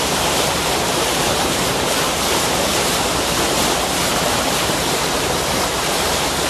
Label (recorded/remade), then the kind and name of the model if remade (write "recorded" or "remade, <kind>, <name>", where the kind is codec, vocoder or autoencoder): remade, vocoder, BigVGAN v2